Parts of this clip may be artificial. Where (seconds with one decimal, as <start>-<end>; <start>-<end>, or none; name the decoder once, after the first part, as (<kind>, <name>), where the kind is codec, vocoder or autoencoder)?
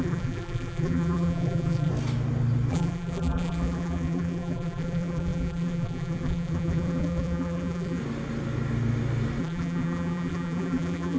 0.0-1.9 (vocoder, BigVGAN v2); 2.7-8.0; 9.4-11.2